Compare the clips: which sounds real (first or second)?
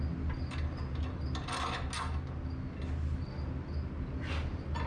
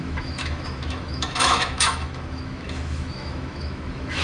first